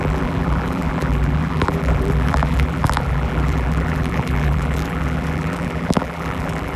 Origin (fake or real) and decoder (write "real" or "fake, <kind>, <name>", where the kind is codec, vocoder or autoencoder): fake, vocoder, BigVGAN v2